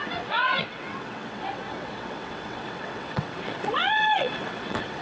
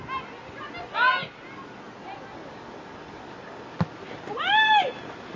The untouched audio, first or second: second